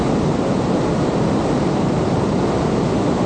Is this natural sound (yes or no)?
yes